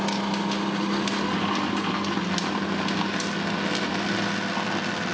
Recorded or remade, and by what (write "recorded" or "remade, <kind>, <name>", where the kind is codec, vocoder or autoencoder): recorded